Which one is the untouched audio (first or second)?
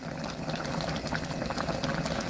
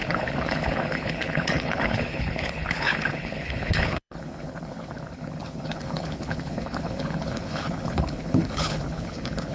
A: first